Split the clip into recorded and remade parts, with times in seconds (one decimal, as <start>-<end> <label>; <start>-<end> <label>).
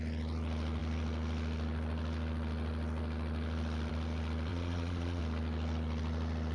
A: 0.0-4.5 recorded; 4.5-5.2 remade; 5.2-6.5 recorded